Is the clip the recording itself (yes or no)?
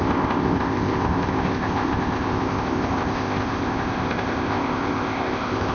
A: no